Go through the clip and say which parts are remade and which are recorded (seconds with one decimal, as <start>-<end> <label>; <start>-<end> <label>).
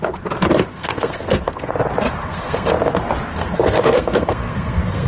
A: 0.0-0.7 recorded; 0.7-1.7 remade; 1.7-2.2 recorded; 2.2-2.7 remade; 2.7-3.3 recorded; 3.3-5.1 remade